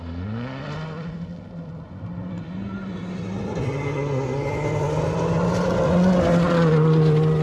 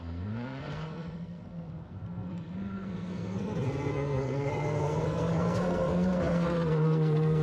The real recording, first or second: first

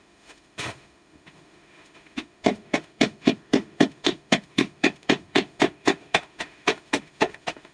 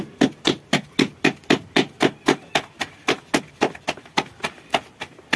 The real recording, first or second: second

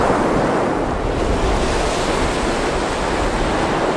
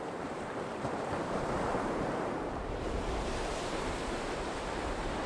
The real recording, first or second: first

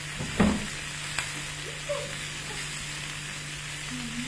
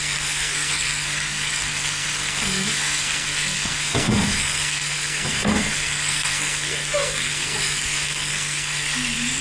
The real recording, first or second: first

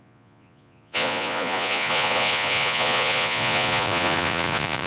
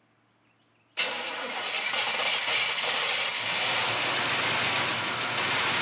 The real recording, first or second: second